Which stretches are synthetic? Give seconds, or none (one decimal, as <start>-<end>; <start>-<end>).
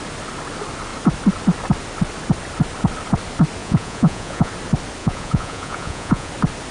3.6-4.5; 5.0-6.3